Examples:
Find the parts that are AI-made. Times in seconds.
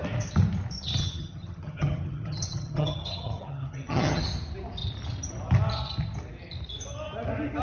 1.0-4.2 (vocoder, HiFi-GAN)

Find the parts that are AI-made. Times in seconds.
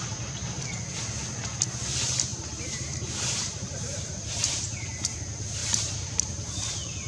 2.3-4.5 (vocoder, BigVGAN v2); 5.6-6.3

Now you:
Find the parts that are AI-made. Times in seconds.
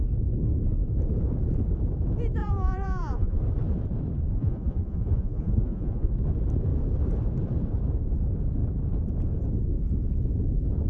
2.4-3.4 (vocoder, Vocos); 4.4-6.1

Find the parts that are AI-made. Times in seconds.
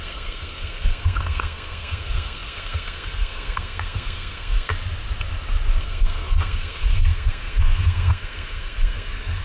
0.0-4.7 (codec, SNAC); 5.8-9.4